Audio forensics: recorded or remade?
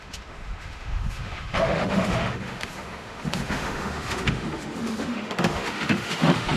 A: remade